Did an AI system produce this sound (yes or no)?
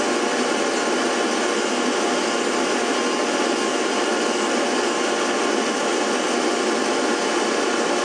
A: no